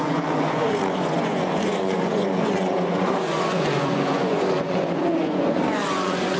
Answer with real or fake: fake